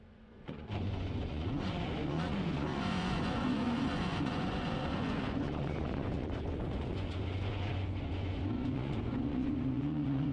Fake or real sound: fake